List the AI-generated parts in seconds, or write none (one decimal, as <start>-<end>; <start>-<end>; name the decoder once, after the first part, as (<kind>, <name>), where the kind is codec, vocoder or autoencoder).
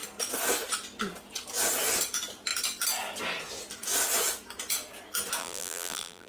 5.4-6.3 (vocoder, BigVGAN v2)